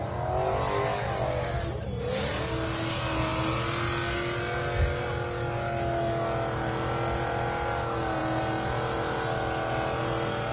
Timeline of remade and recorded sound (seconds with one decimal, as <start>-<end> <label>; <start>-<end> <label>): 0.0-10.5 recorded